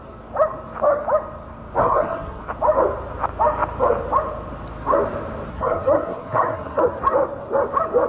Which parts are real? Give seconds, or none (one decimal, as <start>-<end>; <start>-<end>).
0.0-1.8; 2.4-5.5; 6.8-8.1